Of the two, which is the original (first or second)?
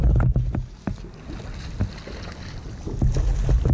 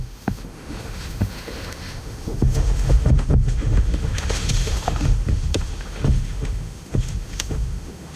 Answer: first